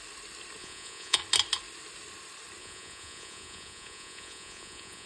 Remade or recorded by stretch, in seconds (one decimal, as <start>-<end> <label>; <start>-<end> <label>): 0.0-0.6 recorded; 0.6-1.2 remade; 1.2-2.6 recorded; 2.6-5.1 remade